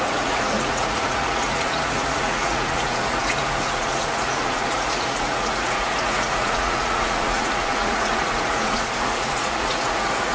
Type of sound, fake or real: fake